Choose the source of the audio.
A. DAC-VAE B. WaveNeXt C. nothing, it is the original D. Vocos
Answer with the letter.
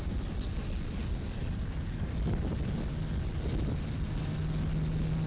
C